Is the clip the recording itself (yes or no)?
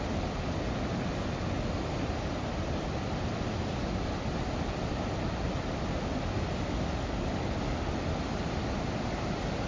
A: yes